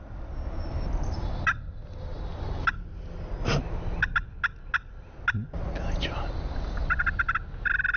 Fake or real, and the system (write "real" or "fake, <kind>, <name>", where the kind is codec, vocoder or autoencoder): real